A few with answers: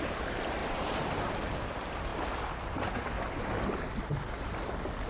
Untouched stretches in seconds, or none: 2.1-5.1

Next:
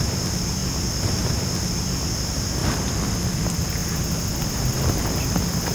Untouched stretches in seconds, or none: 0.0-5.7

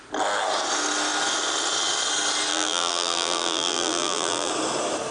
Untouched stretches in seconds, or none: 0.0-2.5; 4.5-5.1

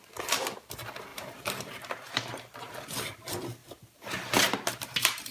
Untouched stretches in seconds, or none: 0.0-1.1; 2.7-3.6

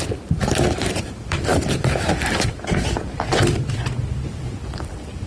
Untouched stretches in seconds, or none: 1.5-4.3

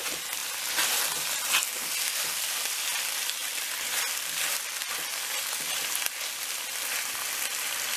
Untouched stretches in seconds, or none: 0.0-0.4; 1.6-3.4; 7.1-8.0

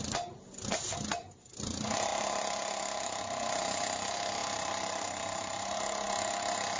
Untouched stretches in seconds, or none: 0.0-4.4; 5.8-6.8